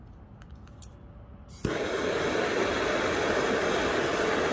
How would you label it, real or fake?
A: real